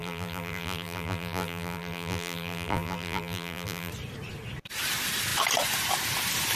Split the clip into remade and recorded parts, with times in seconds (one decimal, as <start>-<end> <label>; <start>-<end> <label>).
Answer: 0.0-3.9 remade; 3.9-6.6 recorded